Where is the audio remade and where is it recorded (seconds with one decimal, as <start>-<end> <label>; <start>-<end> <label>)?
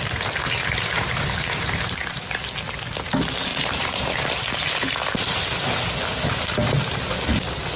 0.0-0.6 recorded; 0.6-2.2 remade; 2.2-3.5 recorded; 3.5-4.7 remade; 4.7-7.8 recorded